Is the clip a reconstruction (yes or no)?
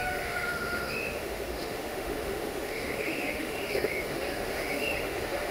yes